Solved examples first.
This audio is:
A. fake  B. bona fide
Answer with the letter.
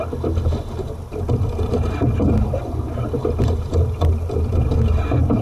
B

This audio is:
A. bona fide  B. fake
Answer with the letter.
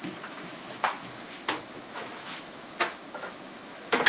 B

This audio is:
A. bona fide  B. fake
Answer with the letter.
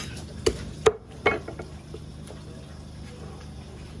A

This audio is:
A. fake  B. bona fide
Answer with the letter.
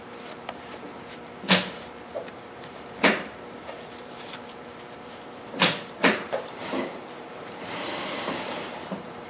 A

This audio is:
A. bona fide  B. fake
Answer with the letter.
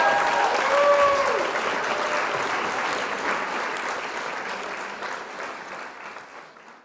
A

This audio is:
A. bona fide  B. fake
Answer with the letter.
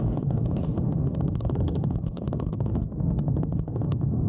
B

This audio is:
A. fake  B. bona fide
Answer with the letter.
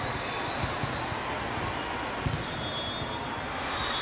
B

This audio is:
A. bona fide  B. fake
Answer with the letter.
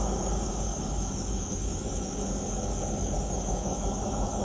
B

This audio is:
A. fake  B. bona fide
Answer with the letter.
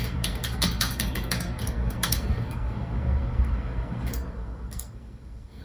A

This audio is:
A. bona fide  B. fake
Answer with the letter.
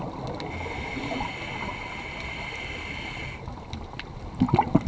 A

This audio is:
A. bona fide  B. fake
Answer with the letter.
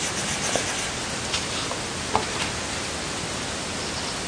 A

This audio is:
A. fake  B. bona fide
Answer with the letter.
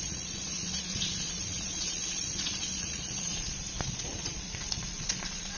A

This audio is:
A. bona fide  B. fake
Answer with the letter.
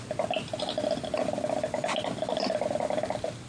A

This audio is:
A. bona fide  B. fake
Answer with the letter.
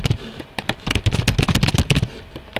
A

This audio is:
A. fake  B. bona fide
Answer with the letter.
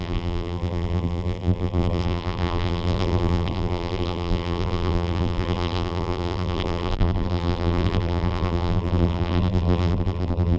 A